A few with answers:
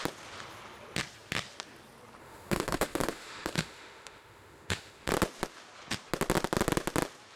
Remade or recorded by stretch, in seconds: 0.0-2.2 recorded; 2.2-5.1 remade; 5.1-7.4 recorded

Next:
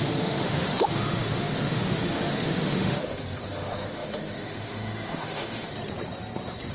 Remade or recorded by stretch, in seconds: 0.0-5.7 remade; 5.7-6.7 recorded

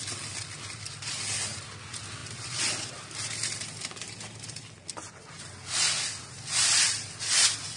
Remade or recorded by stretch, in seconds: 0.0-7.8 recorded

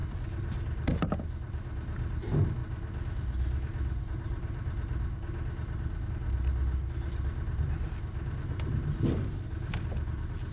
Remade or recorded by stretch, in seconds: 0.0-10.5 recorded

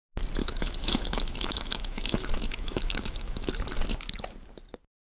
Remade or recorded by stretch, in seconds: 0.0-0.4 recorded; 0.4-3.5 remade; 3.5-5.2 recorded

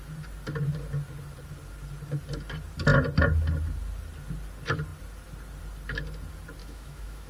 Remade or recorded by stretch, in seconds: 0.0-6.6 recorded; 6.6-7.3 remade

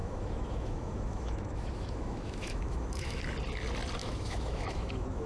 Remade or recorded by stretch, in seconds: 0.0-3.2 remade; 3.2-4.0 recorded; 4.0-5.3 remade